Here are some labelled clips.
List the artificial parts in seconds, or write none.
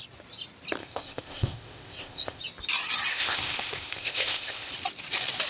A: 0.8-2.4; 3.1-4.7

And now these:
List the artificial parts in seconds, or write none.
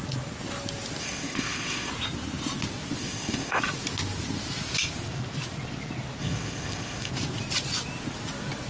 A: 1.0-1.9; 3.0-3.6; 6.2-7.1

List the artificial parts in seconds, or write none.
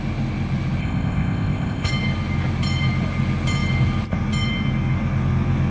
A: 0.8-1.9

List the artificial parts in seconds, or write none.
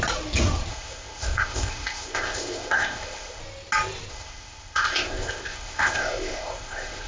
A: 0.7-3.4; 4.1-7.1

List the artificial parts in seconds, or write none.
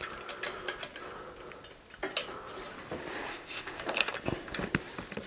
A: 3.3-3.8